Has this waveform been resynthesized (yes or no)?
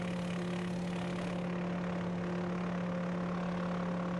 no